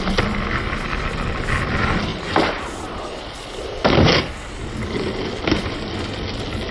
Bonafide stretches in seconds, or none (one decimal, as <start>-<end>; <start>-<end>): 0.0-6.7